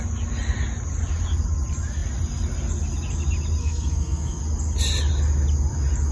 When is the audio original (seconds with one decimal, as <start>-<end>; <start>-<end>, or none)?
0.0-3.6; 4.4-6.1